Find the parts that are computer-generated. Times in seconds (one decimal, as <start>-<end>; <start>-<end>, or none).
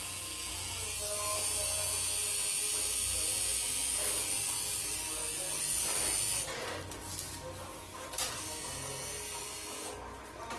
none